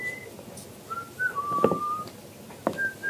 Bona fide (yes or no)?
yes